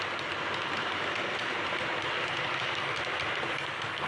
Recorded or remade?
recorded